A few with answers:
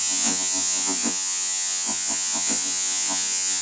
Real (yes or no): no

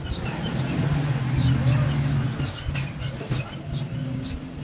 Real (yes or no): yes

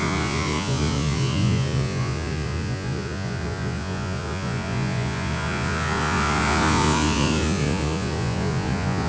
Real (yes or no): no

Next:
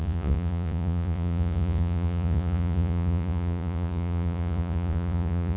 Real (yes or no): no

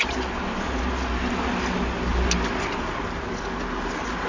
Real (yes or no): yes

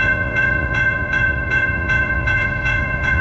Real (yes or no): no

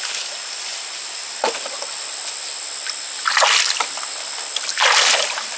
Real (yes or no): yes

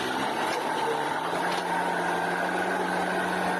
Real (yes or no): yes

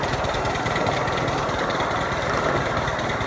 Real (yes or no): yes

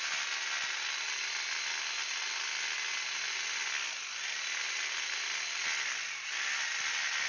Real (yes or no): yes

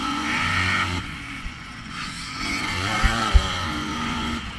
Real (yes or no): no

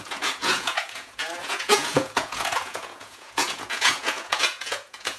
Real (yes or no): no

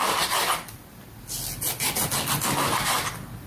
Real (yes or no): yes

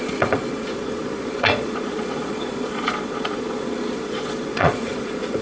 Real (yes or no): no